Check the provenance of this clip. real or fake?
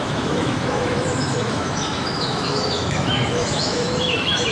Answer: fake